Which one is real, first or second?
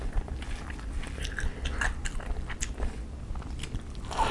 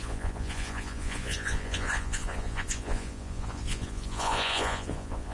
first